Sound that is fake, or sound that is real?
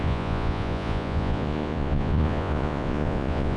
fake